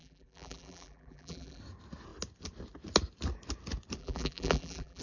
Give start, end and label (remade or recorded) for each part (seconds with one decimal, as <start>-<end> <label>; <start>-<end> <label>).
0.0-1.6 remade; 1.6-4.0 recorded; 4.0-5.0 remade